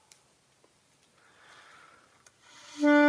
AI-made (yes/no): no